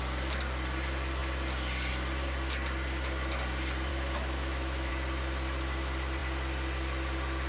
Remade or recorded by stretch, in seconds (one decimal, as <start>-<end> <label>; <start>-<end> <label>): 0.0-3.9 recorded; 3.9-4.9 remade; 4.9-7.5 recorded